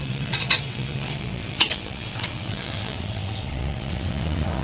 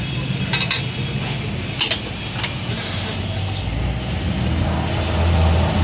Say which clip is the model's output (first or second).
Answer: first